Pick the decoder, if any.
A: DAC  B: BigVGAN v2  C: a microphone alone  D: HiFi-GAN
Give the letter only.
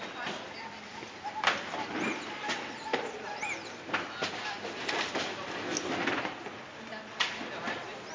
C